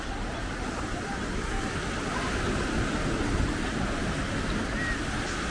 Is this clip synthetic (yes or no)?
no